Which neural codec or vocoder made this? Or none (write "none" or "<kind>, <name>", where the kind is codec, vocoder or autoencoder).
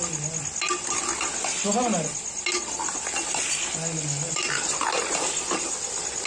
none